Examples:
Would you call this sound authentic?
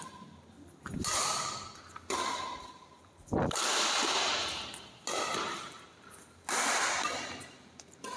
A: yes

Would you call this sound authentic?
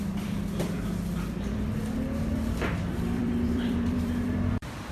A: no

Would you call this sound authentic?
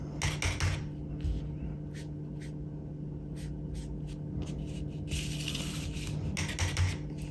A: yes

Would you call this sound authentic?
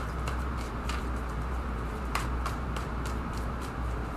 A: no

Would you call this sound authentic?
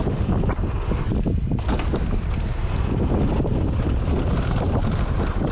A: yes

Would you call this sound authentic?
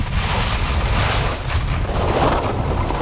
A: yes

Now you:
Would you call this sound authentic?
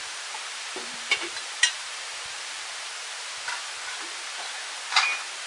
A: no